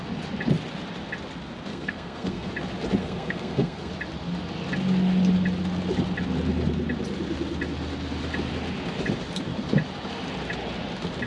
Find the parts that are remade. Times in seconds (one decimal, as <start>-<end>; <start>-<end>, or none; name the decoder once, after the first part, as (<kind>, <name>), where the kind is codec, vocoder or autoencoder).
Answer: 1.7-2.5 (codec, SNAC); 3.0-3.9